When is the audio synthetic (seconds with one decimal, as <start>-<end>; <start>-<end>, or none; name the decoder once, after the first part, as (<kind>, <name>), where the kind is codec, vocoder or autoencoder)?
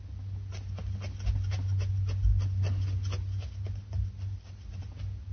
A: none